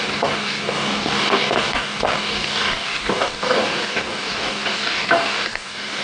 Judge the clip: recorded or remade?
remade